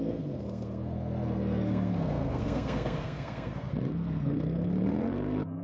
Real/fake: fake